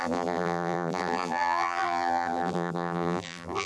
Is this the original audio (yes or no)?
no